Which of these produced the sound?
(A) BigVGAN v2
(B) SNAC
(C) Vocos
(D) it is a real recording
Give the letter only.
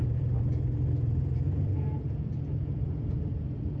C